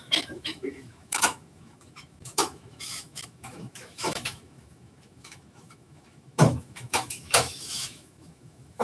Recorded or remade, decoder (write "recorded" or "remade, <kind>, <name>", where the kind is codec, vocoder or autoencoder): remade, autoencoder, DAC-VAE